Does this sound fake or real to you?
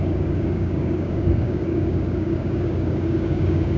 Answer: fake